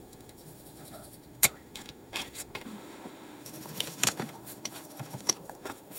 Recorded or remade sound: remade